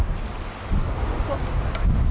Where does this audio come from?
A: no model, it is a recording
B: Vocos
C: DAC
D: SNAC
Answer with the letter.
A